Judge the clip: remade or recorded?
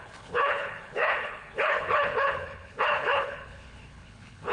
remade